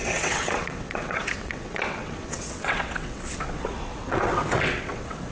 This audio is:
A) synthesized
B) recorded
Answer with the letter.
A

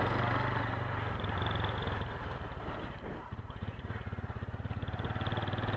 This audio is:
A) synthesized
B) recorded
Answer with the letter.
A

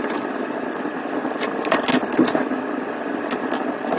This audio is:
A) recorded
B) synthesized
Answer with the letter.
A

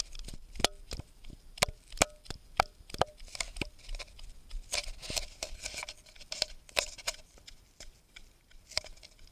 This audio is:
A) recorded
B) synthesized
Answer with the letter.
A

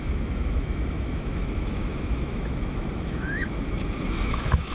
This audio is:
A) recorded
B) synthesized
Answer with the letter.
B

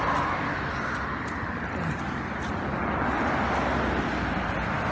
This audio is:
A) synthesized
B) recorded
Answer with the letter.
B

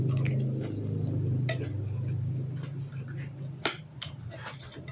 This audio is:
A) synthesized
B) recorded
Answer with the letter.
B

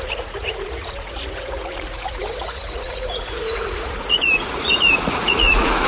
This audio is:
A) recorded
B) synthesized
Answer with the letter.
B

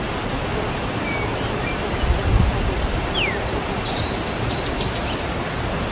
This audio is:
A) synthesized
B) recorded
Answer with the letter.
B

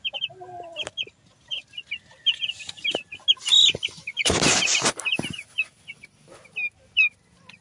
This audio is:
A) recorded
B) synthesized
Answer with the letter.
A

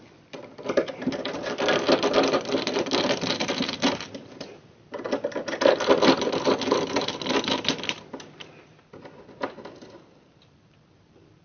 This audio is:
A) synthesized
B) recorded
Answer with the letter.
A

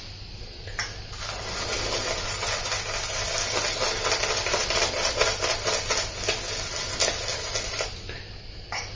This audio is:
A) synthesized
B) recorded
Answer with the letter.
B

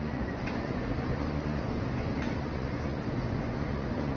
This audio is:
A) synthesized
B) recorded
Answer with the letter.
A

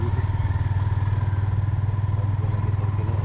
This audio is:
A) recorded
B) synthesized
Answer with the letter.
A